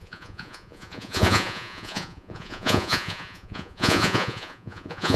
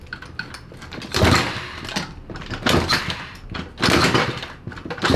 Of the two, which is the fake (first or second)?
first